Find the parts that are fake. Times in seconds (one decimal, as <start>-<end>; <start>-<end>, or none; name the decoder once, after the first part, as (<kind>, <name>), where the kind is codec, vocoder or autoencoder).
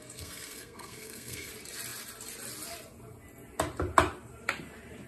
0.0-1.5 (codec, SNAC)